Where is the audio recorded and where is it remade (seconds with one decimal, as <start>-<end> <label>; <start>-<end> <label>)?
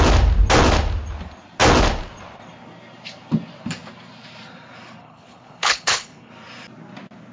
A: 0.0-5.0 recorded; 5.0-6.3 remade; 6.3-7.3 recorded